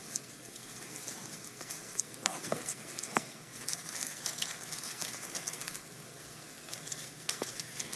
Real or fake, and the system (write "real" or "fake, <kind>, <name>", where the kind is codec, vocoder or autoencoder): fake, codec, SNAC